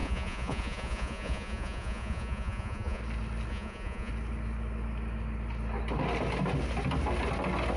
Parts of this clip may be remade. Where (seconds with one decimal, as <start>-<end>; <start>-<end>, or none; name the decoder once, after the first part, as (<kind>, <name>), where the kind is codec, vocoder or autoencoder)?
0.0-3.0 (vocoder, Vocos); 3.5-4.1